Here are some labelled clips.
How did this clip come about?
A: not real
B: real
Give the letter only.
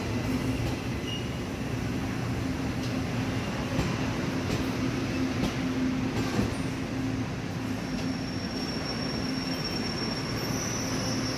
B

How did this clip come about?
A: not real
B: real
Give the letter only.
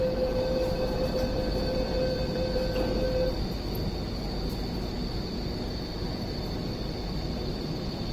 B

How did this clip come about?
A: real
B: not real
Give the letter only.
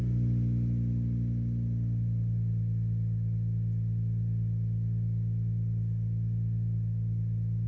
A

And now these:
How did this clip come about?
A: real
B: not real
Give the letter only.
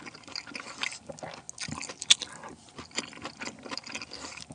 A